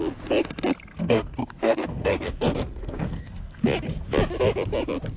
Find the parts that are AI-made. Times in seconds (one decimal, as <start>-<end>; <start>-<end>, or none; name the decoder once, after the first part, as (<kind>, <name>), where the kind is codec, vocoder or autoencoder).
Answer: 0.9-3.6 (codec, SNAC)